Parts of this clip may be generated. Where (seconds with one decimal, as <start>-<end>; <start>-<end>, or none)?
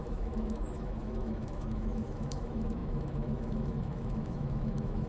0.0-5.1